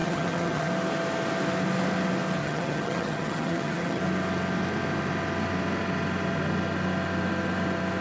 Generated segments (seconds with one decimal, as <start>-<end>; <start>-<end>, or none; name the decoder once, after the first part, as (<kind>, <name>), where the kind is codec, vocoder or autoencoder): 0.0-0.7 (vocoder, HiFi-GAN); 2.4-4.0